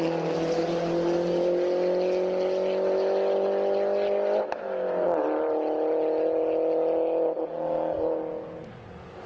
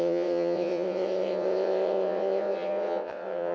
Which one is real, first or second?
first